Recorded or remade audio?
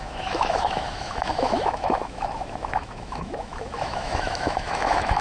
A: remade